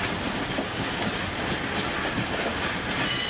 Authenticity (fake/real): real